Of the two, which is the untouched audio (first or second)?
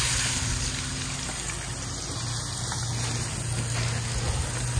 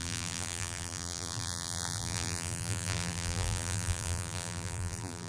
first